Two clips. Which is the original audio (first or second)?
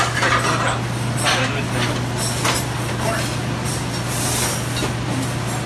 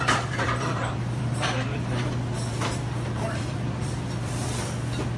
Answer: first